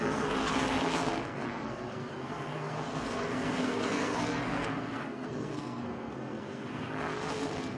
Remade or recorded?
remade